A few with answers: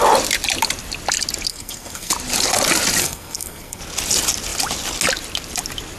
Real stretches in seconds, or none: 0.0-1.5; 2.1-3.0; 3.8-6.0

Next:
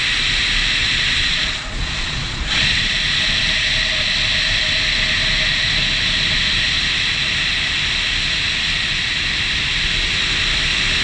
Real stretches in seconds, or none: 0.0-0.8; 2.6-11.0

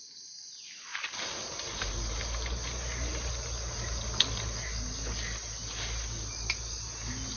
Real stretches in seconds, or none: 0.0-7.4